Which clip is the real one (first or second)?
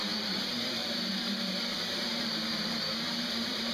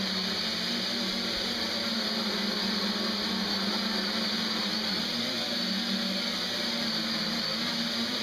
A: second